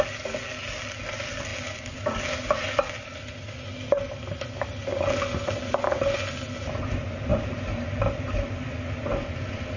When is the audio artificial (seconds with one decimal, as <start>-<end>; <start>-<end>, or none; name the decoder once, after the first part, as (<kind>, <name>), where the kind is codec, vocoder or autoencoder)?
7.3-8.3 (vocoder, BigVGAN v2)